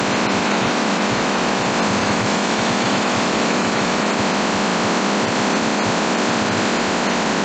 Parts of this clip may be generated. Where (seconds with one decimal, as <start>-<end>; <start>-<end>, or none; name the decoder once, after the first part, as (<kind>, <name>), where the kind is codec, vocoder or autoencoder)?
0.4-1.6 (autoencoder, DAC-VAE); 2.0-4.1